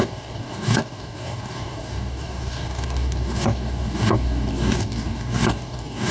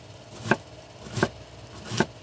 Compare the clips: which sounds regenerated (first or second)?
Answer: first